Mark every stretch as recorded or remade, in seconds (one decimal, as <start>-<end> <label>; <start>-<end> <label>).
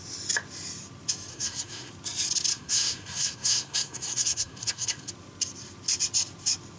0.0-1.3 recorded; 1.3-1.9 remade; 1.9-2.5 recorded; 2.5-5.1 remade; 5.1-6.8 recorded